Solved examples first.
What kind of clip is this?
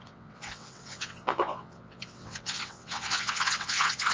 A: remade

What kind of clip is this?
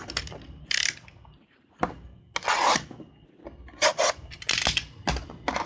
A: recorded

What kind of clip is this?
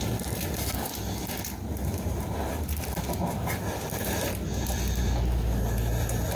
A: recorded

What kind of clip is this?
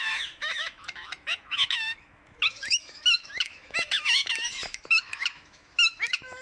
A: remade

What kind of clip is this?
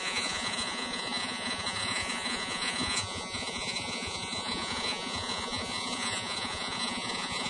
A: remade